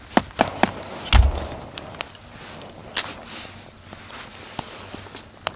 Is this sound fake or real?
real